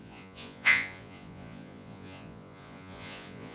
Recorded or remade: remade